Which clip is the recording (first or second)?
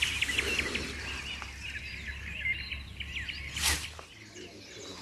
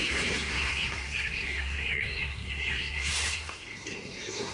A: first